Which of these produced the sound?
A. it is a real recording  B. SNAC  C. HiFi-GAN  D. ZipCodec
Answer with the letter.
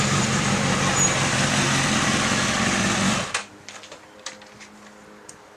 A